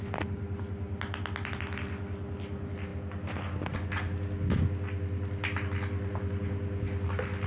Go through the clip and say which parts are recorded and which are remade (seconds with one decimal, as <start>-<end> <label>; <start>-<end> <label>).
0.0-7.5 recorded